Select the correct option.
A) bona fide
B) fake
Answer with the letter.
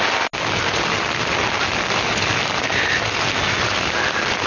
A